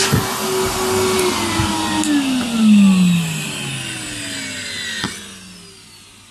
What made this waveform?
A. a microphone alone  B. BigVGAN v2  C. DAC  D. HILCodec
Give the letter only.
A